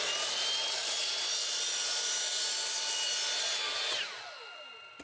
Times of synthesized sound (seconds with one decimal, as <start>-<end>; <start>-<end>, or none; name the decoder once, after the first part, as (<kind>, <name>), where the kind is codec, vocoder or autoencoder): none

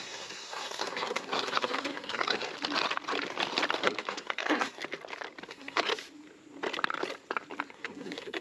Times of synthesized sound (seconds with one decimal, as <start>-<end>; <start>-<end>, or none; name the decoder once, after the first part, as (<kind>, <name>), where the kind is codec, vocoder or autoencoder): 0.0-2.5 (codec, SNAC); 3.8-4.8; 5.5-5.9; 7.7-8.4